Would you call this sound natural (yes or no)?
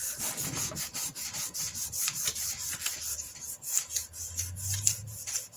yes